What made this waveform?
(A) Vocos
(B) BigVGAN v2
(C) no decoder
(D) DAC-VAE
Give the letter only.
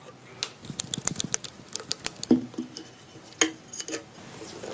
C